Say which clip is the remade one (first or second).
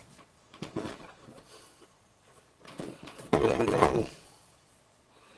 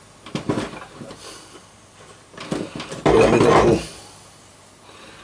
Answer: first